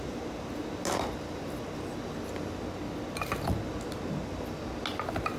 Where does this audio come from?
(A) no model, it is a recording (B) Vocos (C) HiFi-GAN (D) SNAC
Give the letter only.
A